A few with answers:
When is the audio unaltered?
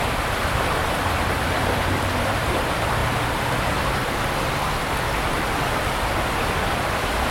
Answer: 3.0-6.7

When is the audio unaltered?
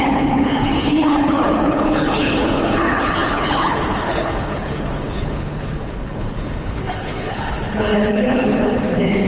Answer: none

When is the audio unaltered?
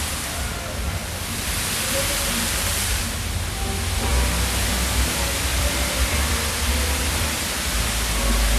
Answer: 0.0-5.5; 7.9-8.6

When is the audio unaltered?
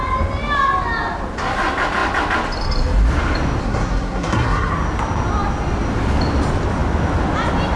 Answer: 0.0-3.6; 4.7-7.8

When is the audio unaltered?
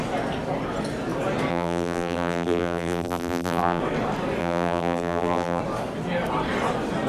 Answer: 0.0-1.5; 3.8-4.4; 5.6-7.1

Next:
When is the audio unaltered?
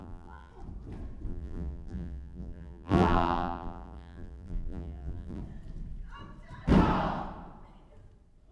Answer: 0.5-1.3; 5.4-8.5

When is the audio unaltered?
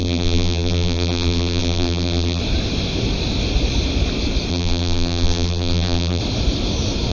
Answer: 2.4-4.5; 6.2-7.1